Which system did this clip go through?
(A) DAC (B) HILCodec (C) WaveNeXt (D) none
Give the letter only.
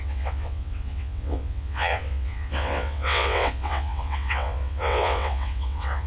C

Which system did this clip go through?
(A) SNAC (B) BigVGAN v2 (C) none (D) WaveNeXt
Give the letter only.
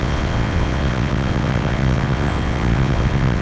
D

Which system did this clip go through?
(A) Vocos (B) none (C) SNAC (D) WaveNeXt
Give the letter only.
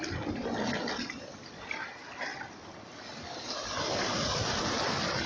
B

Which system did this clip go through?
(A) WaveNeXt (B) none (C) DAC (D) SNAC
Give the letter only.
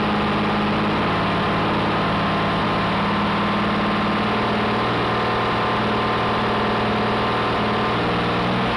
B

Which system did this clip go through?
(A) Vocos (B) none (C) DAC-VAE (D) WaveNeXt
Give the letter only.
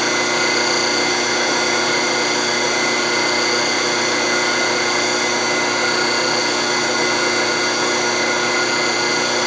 B